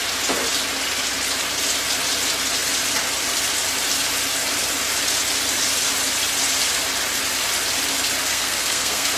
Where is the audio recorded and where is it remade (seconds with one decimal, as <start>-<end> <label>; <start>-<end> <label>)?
0.0-8.3 recorded; 8.3-9.2 remade